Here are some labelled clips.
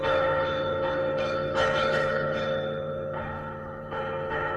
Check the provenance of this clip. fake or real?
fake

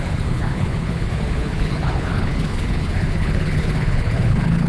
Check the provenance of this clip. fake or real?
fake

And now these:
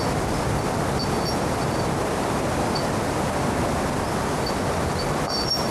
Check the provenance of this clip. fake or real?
real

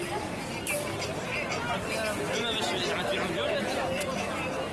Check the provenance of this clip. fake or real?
real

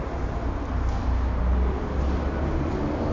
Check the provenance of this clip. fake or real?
real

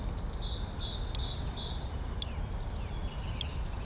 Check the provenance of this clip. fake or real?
real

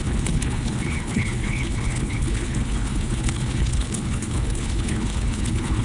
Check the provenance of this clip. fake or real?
fake